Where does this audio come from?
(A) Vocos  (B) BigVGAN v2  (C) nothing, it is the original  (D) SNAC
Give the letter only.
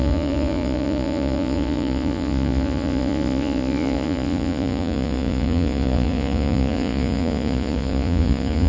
A